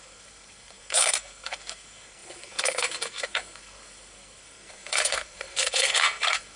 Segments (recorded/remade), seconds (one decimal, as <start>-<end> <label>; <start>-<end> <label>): 0.0-6.6 remade